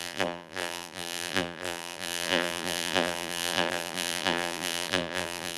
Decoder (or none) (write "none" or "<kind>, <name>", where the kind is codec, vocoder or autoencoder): vocoder, BigVGAN v2